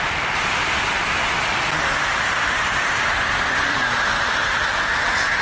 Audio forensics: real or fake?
fake